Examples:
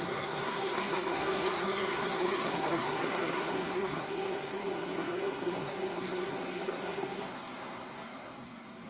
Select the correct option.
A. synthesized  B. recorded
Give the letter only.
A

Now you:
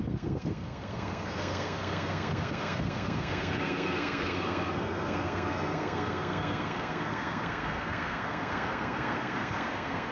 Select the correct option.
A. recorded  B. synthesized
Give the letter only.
B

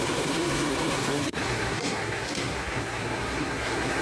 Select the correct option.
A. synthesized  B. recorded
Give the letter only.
A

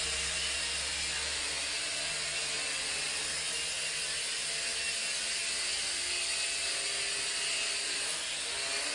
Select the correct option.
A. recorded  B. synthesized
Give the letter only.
A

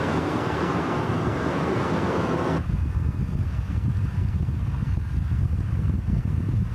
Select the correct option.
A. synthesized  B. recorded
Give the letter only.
A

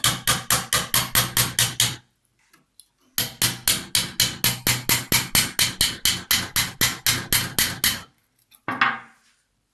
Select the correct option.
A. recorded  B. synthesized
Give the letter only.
A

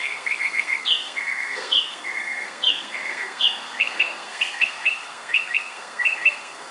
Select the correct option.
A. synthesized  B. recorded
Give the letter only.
A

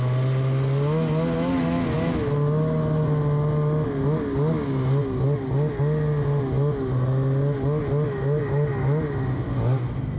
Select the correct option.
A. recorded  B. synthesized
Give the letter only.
A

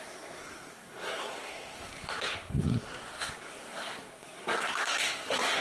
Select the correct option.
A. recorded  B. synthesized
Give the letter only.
B